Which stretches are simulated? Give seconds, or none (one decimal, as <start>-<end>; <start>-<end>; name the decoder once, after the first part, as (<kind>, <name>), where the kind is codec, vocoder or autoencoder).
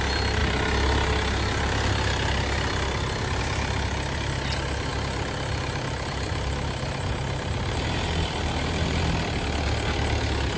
4.9-9.0 (vocoder, BigVGAN v2)